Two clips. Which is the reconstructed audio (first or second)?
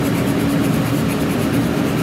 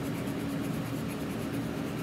first